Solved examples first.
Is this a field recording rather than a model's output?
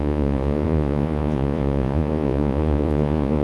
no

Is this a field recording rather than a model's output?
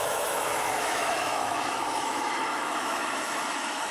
no